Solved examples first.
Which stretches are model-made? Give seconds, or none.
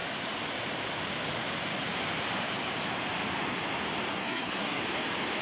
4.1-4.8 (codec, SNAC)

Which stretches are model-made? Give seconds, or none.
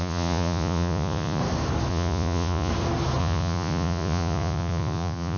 0.0-1.4 (vocoder, Vocos); 1.9-2.7; 3.2-5.4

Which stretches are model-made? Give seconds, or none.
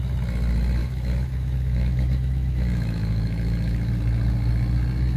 0.8-3.9 (autoencoder, DAC-VAE)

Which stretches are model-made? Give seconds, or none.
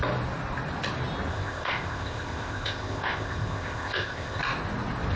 1.3-4.4 (codec, ZipCodec)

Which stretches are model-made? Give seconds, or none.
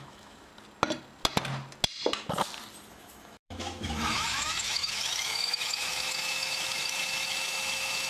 0.0-0.5 (autoencoder, DAC-VAE); 2.9-8.1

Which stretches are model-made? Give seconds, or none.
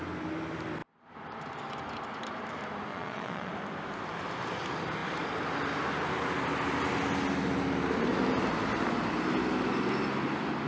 2.9-3.5 (vocoder, Vocos)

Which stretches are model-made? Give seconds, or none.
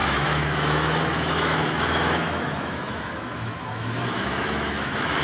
0.0-5.2 (autoencoder, DAC-VAE)